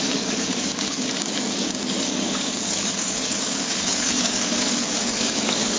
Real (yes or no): no